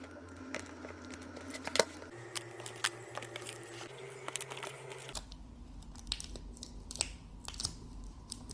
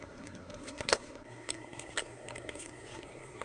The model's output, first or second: second